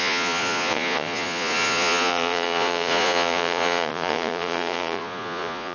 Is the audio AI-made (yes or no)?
yes